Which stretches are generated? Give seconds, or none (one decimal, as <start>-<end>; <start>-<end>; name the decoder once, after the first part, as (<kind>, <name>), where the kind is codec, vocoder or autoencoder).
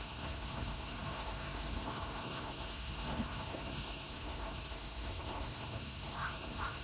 0.0-6.8 (codec, SNAC)